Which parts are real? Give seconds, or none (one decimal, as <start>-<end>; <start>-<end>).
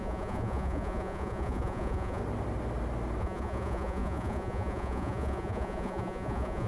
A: 2.2-3.2